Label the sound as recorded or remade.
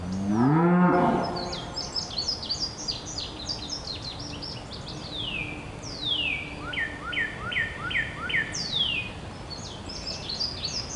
recorded